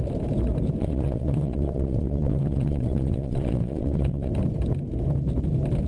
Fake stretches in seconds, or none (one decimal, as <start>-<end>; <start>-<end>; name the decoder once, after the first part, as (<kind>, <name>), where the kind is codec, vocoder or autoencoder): 0.8-4.3 (vocoder, WaveNeXt)